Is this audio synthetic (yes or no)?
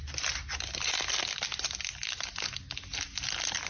no